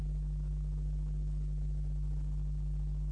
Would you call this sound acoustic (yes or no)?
yes